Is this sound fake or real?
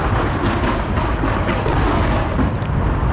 real